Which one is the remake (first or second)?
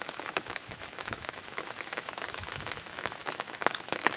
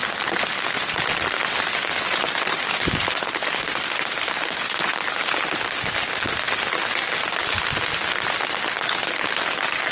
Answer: first